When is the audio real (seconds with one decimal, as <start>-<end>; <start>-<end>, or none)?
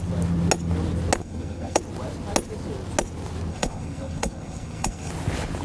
0.0-1.2; 1.8-3.5; 5.1-5.6